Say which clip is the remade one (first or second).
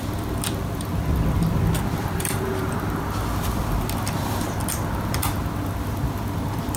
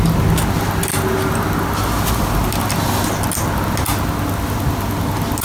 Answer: first